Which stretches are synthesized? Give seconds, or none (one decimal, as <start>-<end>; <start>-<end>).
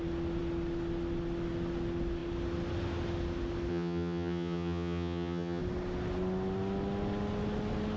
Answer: 3.7-5.6